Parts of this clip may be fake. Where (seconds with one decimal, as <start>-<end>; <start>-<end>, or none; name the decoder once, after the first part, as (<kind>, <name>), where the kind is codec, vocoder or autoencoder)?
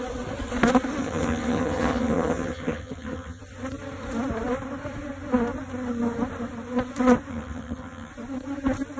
1.0-3.4 (vocoder, HiFi-GAN); 7.3-8.1